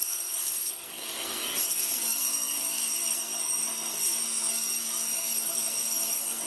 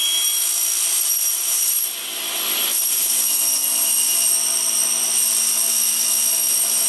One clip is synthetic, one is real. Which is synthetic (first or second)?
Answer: first